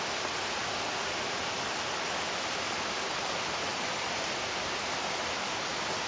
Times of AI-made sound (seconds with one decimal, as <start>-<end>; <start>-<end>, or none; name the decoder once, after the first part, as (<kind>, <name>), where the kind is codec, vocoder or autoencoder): none